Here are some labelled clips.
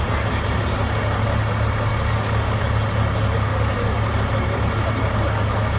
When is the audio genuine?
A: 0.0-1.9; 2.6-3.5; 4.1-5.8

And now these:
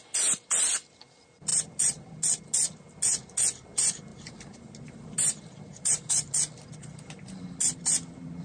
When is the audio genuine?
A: 0.0-1.5; 2.1-4.1; 6.3-8.4

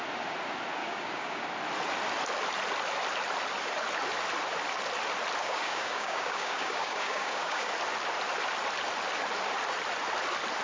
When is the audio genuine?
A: 0.0-0.8; 1.4-5.4; 7.7-10.6

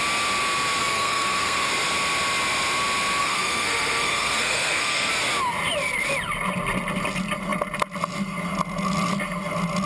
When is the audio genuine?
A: 0.0-0.8; 1.7-3.2; 5.1-9.9

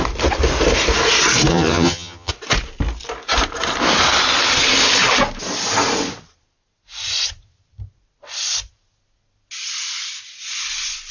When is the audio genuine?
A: 0.0-1.5; 2.3-11.1

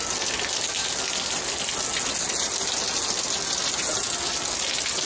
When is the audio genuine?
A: 0.0-5.1